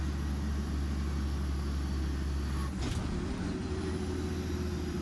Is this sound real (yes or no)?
yes